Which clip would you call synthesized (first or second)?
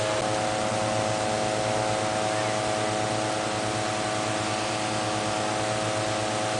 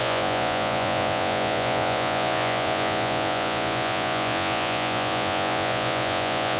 second